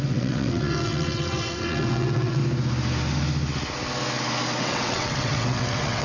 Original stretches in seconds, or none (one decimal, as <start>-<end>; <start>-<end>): 2.4-4.6